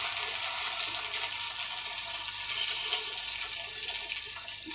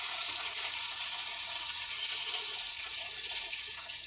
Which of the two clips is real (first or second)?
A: first